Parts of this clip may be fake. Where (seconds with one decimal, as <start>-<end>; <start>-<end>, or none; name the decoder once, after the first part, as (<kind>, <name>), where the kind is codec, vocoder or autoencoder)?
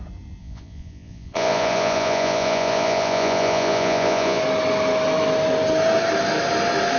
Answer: 0.4-4.4 (vocoder, Vocos)